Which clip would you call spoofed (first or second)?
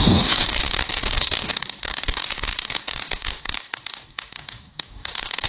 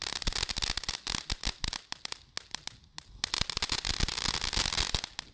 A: first